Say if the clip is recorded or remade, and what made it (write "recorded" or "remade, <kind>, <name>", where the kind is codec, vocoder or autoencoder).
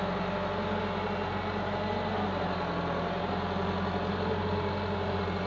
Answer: recorded